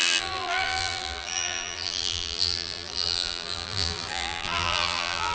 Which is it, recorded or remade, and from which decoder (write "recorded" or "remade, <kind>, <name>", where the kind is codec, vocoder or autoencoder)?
remade, vocoder, BigVGAN v2